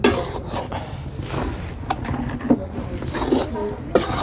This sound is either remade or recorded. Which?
recorded